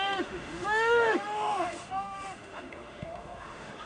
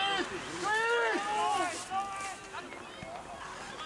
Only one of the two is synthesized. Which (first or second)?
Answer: first